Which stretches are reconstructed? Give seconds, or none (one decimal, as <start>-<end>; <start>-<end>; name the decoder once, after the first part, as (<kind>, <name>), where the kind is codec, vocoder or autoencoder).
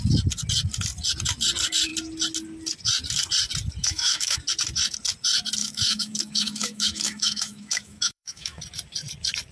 3.8-4.4 (autoencoder, DAC-VAE); 5.6-8.6